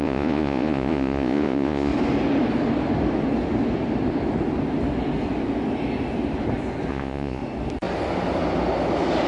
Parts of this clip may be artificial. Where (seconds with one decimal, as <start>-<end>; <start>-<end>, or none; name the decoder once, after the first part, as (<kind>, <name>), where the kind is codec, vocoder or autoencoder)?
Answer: 0.0-1.9 (vocoder, Vocos); 6.9-7.4

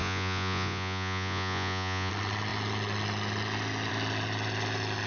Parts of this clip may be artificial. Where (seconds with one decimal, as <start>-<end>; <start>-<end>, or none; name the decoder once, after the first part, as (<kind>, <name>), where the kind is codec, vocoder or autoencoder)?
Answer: 0.0-2.1 (vocoder, Vocos)